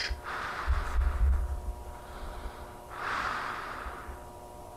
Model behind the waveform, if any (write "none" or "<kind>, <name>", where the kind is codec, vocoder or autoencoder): none